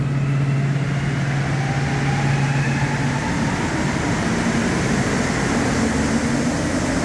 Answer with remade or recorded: recorded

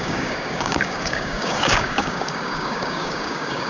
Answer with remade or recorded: remade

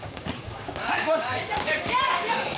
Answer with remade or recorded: remade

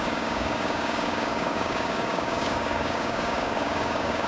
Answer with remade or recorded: remade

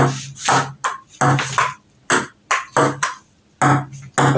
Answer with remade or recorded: recorded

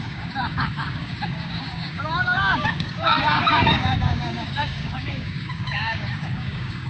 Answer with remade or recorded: remade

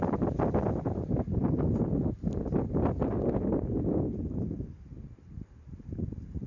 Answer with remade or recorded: recorded